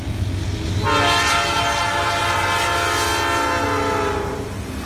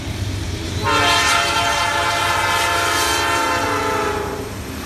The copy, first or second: second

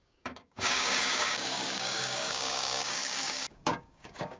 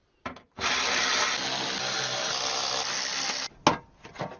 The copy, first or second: first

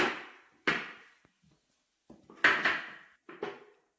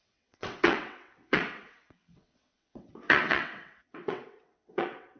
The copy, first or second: second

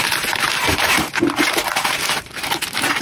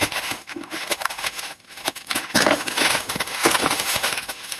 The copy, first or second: second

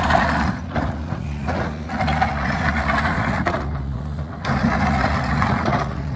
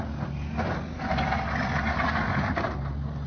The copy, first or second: first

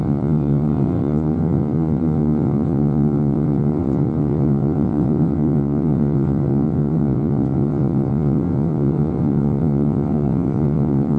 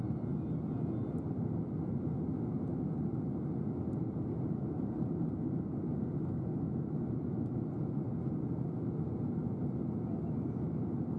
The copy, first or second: first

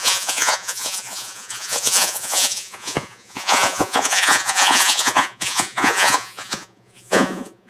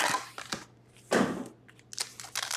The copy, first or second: first